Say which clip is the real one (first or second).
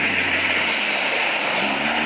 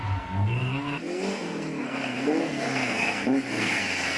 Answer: first